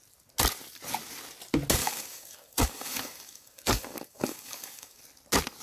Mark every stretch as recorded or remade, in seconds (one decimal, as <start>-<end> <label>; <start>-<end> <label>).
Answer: 0.0-1.8 recorded; 1.8-5.0 remade; 5.0-5.6 recorded